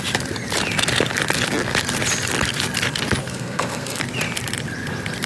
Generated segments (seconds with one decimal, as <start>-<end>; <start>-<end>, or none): 3.2-4.0